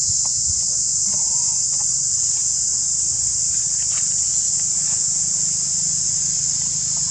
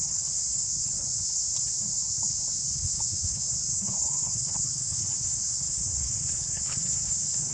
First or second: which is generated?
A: second